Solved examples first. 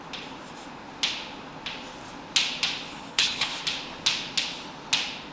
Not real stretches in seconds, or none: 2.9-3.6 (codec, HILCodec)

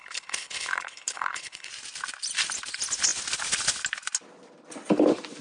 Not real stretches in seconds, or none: 0.0-1.7 (codec, HILCodec)

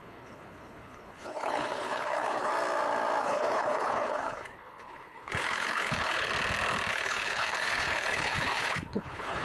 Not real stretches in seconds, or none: 0.0-2.5 (codec, HILCodec); 3.2-6.3; 6.9-9.4

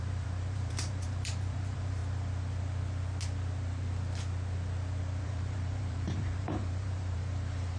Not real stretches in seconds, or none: 0.0-2.0 (vocoder, BigVGAN v2); 5.2-7.8